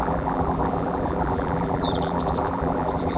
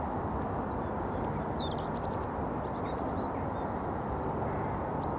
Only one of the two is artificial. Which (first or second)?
first